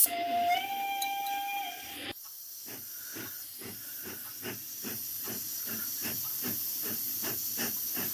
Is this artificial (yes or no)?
no